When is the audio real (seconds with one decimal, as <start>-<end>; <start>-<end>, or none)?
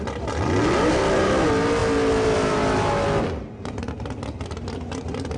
0.0-5.4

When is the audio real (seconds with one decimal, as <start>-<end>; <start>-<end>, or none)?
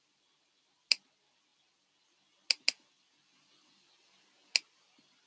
0.0-5.3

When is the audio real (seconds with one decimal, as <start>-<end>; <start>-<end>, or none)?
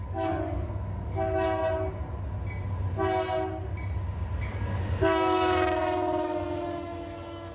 1.6-4.4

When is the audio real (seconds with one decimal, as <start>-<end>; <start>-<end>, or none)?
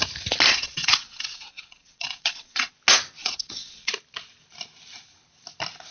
0.0-0.5; 2.7-3.2; 3.9-5.9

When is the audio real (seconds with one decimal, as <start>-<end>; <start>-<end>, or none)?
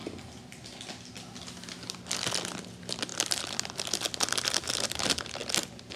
0.0-3.1; 3.7-5.4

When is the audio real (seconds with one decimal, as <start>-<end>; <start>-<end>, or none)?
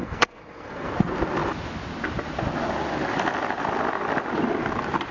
0.9-5.1